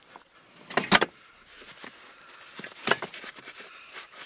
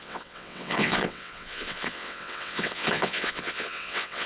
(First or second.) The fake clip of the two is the second